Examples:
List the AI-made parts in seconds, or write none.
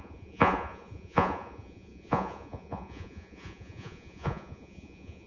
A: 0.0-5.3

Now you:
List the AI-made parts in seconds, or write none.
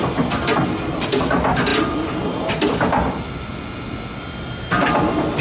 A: none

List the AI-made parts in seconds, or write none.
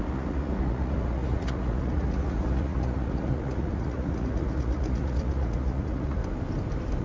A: 0.0-6.2